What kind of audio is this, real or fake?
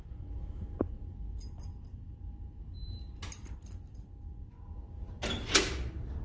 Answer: real